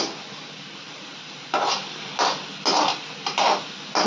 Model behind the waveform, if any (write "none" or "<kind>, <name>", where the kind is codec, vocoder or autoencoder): none